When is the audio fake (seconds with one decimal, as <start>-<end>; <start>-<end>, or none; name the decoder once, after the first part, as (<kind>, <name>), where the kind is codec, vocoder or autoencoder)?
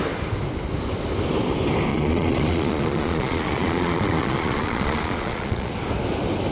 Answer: 1.9-5.7 (vocoder, Vocos)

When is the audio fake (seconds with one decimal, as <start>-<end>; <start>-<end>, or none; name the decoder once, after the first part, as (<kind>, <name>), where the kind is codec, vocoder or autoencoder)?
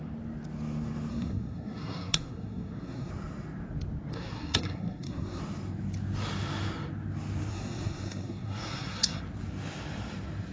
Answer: 1.1-3.1 (codec, SNAC); 4.1-5.4; 7.5-9.2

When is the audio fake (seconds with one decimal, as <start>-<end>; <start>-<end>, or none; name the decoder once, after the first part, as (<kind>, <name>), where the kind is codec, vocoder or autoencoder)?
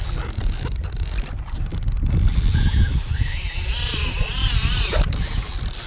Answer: none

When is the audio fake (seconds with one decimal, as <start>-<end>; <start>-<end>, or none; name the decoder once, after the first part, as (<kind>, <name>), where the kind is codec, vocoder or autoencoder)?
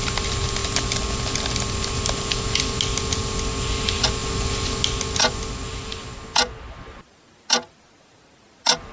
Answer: none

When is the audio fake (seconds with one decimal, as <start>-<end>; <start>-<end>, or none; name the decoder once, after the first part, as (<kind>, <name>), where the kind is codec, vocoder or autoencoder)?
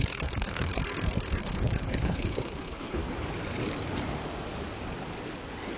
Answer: 0.0-0.8 (codec, HILCodec); 1.4-3.0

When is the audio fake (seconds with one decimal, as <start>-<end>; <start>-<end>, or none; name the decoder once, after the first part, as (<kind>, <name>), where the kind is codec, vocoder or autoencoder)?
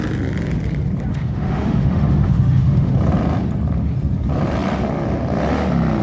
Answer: 1.1-2.9 (autoencoder, DAC-VAE)